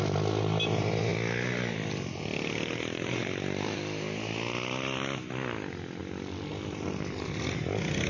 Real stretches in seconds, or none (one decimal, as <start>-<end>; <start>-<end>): 0.0-8.1